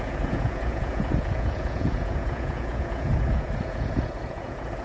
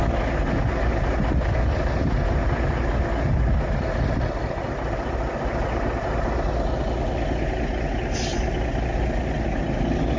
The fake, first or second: first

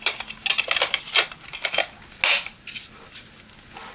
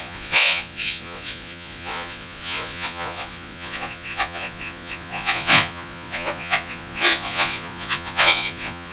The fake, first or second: second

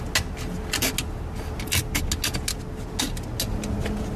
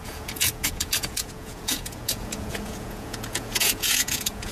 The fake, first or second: second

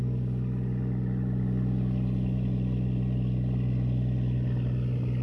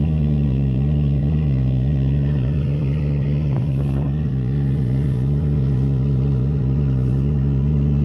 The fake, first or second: second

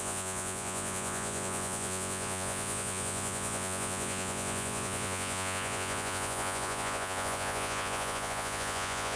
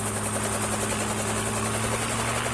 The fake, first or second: first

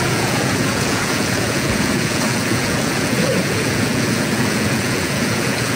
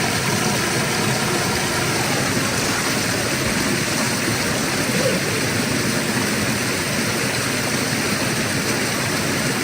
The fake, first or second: first